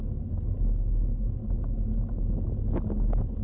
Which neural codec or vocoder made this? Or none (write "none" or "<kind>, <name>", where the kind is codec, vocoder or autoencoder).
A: none